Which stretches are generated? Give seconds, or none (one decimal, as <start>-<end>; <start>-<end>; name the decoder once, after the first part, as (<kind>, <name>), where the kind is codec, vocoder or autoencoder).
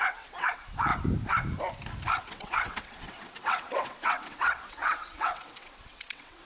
0.0-0.9 (vocoder, WaveNeXt); 2.3-6.4